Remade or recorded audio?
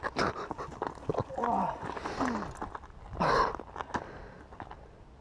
recorded